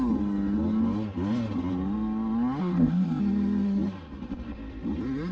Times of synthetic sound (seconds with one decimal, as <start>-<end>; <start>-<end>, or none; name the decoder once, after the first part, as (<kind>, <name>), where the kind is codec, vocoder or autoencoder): 2.6-3.2 (codec, ZipCodec)